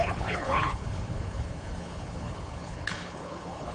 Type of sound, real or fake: fake